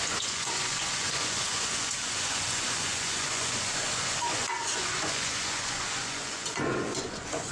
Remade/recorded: remade